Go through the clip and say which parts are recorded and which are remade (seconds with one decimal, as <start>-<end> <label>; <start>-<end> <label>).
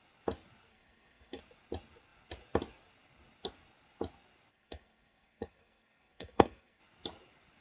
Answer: 0.0-0.7 recorded; 0.7-1.4 remade; 1.4-4.5 recorded; 4.5-6.8 remade; 6.8-7.6 recorded